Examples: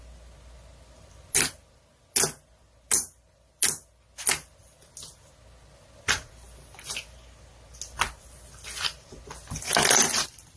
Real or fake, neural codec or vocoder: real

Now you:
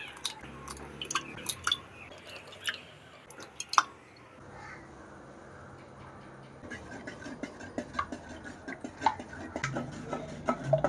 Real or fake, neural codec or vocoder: real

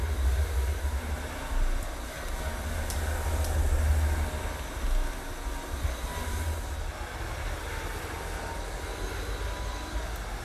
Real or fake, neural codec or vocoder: real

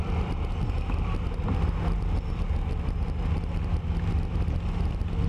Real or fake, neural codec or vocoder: real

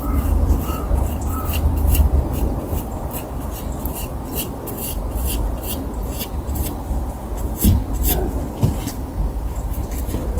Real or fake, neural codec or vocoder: fake, vocoder, BigVGAN v2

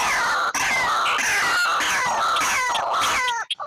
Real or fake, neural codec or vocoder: real